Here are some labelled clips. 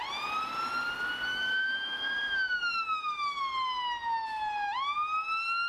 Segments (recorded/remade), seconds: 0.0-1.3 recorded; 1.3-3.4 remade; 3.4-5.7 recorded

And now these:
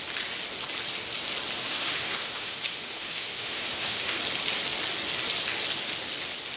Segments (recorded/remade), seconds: 0.0-1.6 recorded; 1.6-4.2 remade; 4.2-6.6 recorded

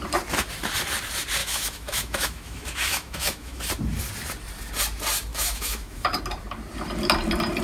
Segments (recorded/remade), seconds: 0.0-1.4 recorded; 1.4-3.6 remade; 3.6-5.3 recorded; 5.3-6.2 remade; 6.2-7.6 recorded

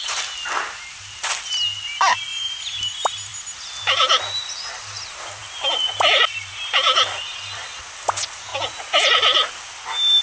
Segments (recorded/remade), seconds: 0.0-10.2 recorded